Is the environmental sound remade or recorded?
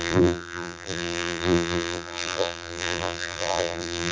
remade